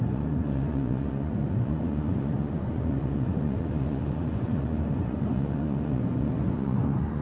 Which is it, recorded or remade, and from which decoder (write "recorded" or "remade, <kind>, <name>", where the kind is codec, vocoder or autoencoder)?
remade, vocoder, Vocos